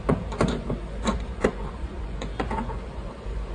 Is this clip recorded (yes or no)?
no